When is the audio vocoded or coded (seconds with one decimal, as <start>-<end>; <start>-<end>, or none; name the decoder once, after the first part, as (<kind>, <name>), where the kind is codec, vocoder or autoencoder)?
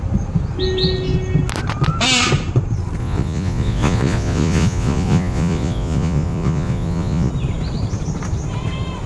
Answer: 3.0-7.3 (vocoder, Vocos)